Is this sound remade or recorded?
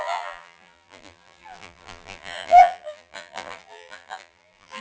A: remade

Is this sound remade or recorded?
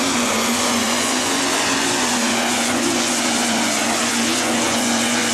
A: remade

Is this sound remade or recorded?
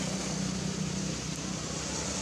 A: recorded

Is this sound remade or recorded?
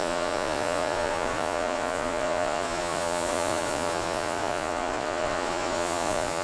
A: remade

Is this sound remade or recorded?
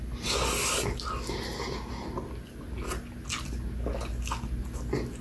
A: recorded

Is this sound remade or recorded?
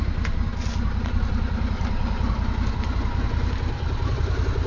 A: recorded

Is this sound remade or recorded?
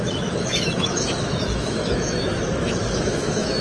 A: remade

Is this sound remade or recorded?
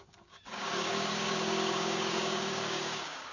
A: remade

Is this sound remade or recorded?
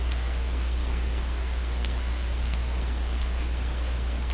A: remade